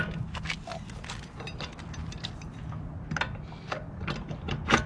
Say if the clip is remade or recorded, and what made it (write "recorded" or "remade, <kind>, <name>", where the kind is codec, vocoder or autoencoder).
recorded